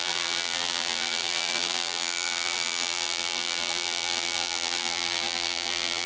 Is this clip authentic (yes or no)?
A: no